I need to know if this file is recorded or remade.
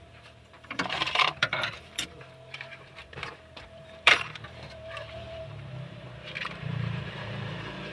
remade